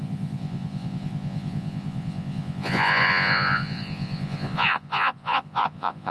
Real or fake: fake